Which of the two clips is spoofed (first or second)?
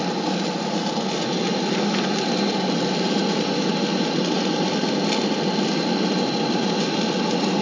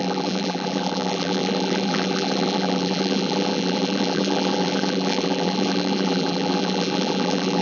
second